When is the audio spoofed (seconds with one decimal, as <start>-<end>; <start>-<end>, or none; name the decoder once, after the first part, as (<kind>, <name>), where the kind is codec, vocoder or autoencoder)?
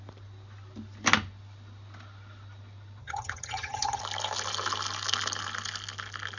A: 3.0-4.0 (vocoder, HiFi-GAN)